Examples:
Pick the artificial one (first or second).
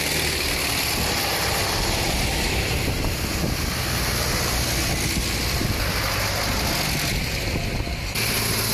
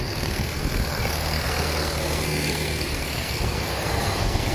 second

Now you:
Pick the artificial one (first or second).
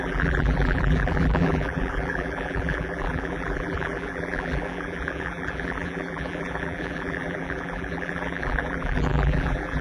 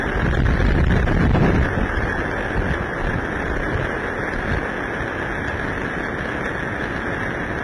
first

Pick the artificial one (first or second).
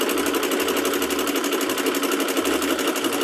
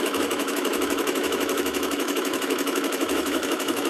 second